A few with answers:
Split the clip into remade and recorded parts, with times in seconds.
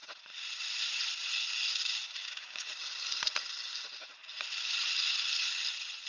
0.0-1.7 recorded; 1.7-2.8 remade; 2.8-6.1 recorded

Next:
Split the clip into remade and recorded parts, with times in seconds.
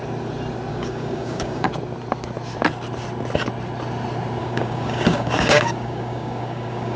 0.0-0.7 recorded; 0.7-1.7 remade; 1.7-4.4 recorded; 4.4-7.0 remade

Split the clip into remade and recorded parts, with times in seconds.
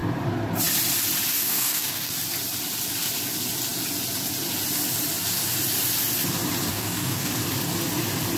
0.0-1.3 recorded; 1.3-2.1 remade; 2.1-6.7 recorded; 6.7-7.3 remade; 7.3-8.4 recorded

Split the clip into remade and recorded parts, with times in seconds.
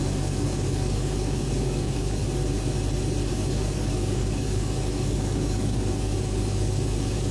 0.0-2.2 remade; 2.2-3.3 recorded; 3.3-7.3 remade